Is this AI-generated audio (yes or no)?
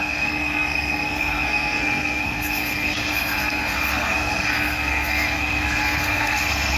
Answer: yes